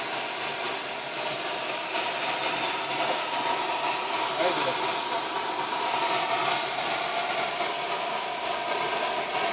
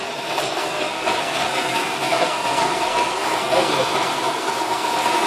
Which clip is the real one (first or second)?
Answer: first